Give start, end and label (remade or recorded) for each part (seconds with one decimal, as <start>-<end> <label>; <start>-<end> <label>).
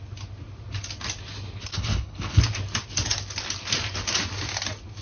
0.0-1.7 recorded; 1.7-2.4 remade; 2.4-5.0 recorded